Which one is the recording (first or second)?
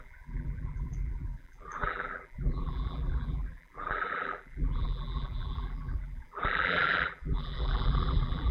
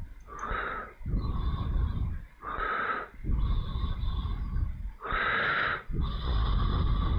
second